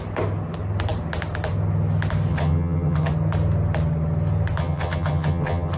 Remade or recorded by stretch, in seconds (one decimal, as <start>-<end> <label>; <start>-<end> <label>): 0.0-2.3 recorded; 2.3-3.1 remade; 3.1-4.6 recorded; 4.6-5.8 remade